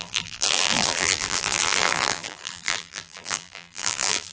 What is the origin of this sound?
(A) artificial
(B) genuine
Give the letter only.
A